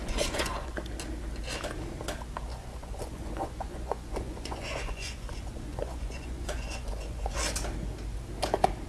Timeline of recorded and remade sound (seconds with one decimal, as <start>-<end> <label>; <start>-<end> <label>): 0.0-0.7 remade; 0.7-2.5 recorded; 2.5-7.4 remade; 7.4-8.9 recorded